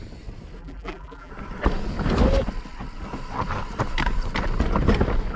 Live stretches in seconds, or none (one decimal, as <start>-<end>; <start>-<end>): 0.0-0.6; 1.3-5.4